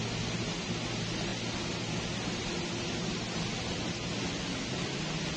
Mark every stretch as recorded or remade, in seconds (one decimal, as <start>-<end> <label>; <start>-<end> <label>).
0.0-5.4 recorded